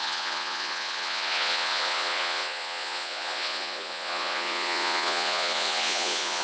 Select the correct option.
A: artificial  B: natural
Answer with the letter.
A